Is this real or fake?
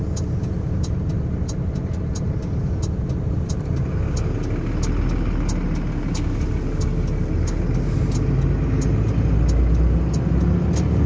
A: real